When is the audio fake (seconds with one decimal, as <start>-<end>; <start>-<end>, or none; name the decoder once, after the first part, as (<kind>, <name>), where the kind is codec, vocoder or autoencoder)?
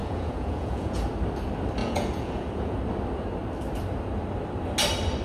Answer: 0.0-1.1 (vocoder, Vocos); 1.8-2.8